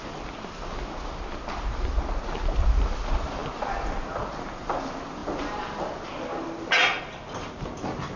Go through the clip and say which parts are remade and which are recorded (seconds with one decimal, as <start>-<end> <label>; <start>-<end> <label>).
0.0-8.2 recorded